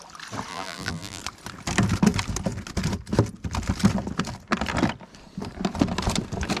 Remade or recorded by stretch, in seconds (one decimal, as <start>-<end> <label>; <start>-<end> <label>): 0.0-0.5 recorded; 0.5-1.2 remade; 1.2-6.6 recorded